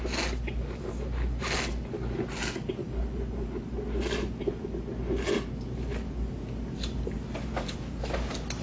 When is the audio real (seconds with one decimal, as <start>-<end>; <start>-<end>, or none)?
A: 0.0-8.6